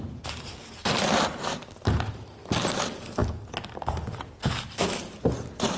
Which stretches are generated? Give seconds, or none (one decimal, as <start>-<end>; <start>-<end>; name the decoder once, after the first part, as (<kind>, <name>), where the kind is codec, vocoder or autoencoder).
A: none